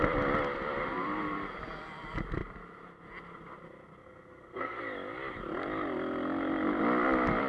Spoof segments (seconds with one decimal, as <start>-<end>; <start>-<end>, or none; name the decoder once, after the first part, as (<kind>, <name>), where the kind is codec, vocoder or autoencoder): 4.0-4.8 (codec, SNAC)